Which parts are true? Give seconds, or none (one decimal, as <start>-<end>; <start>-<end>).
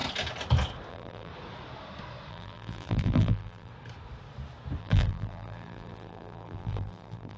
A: 0.0-0.9; 1.3-2.3; 3.7-4.8